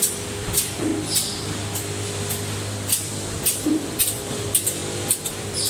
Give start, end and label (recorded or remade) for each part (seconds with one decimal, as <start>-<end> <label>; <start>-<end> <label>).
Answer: 0.0-0.9 remade; 0.9-2.2 recorded; 2.2-4.8 remade; 4.8-5.3 recorded; 5.3-5.7 remade